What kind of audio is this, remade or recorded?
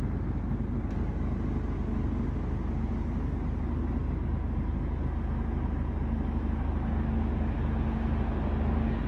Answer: recorded